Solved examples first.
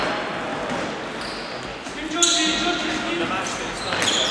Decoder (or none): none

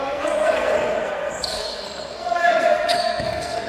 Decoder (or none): codec, SNAC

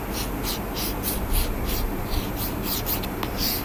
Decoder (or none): none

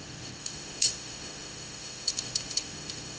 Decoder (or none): autoencoder, DAC-VAE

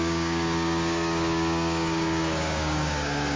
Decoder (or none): codec, DAC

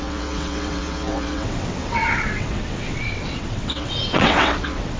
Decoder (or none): vocoder, WaveNeXt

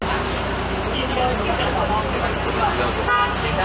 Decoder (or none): none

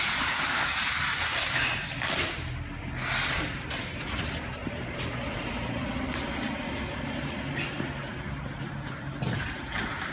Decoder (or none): none